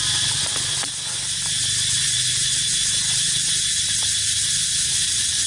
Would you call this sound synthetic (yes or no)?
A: no